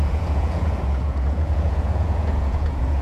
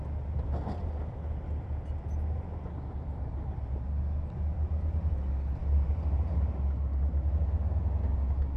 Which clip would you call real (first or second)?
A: second